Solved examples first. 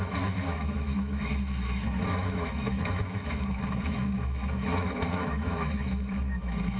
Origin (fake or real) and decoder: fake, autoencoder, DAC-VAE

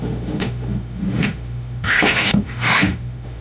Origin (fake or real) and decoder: fake, autoencoder, DAC-VAE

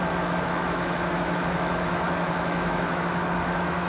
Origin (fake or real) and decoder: fake, autoencoder, DAC-VAE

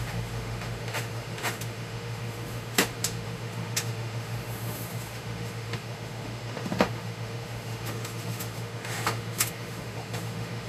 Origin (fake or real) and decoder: fake, autoencoder, DAC-VAE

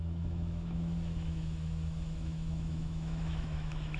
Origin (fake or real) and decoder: fake, autoencoder, DAC-VAE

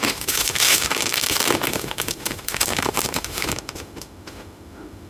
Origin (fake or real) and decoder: fake, autoencoder, DAC-VAE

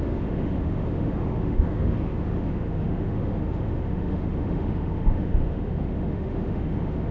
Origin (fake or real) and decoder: fake, autoencoder, DAC-VAE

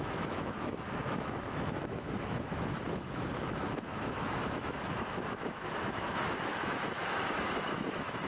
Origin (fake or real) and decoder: fake, autoencoder, DAC-VAE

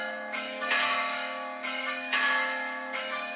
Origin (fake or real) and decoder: fake, autoencoder, DAC-VAE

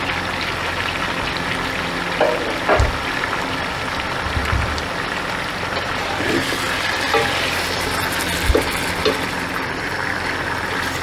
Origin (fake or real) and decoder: real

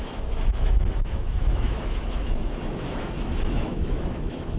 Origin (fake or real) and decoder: fake, autoencoder, DAC-VAE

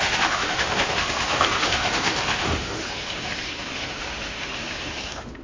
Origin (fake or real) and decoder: fake, autoencoder, DAC-VAE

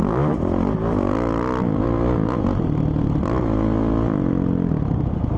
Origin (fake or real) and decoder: real